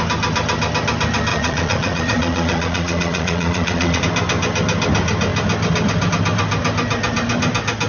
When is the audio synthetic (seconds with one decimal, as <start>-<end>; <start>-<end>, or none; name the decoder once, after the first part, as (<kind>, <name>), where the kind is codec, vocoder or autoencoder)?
1.3-4.0 (vocoder, Vocos)